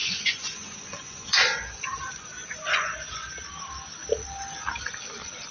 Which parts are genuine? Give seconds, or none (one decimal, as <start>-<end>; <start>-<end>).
3.3-5.5